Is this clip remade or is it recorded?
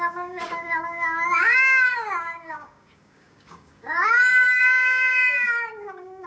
remade